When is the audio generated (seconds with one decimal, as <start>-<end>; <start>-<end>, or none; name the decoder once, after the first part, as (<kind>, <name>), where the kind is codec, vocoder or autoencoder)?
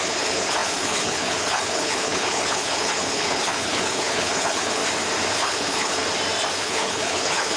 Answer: 0.0-4.8 (codec, HILCodec); 5.3-6.0; 6.6-7.6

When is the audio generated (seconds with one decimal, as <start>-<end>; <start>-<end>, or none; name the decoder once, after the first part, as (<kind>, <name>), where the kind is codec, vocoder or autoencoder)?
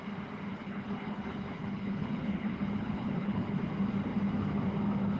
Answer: 0.5-3.6 (codec, HILCodec)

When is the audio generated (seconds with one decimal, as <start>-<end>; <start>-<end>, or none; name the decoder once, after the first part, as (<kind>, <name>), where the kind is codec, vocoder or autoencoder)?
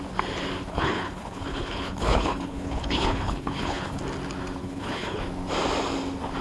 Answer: 0.7-4.0 (codec, HILCodec); 4.6-5.2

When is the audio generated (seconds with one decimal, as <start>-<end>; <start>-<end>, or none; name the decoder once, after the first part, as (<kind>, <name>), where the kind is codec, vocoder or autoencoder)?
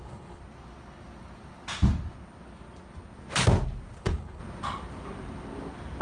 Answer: 0.0-0.4 (codec, HILCodec); 4.0-4.4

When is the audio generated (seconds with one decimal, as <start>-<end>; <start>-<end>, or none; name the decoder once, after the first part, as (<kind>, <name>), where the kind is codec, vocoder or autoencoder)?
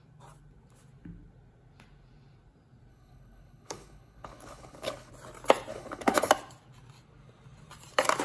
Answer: 2.9-5.1 (codec, HILCodec); 5.7-6.3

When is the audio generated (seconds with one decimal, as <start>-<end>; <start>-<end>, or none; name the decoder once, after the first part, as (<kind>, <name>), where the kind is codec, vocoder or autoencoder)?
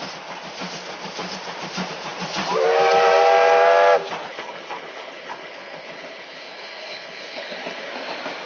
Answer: 4.3-7.9 (codec, HILCodec)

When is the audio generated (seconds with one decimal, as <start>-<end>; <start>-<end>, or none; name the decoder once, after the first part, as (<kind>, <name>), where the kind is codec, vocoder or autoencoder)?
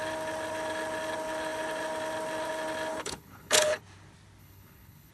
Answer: 2.9-3.8 (codec, HILCodec); 4.4-5.1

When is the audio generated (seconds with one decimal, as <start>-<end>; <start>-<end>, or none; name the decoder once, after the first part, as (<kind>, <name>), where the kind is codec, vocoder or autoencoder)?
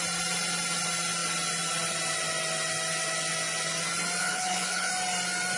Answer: 4.2-4.9 (codec, HILCodec)